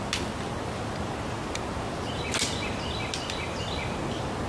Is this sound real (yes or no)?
yes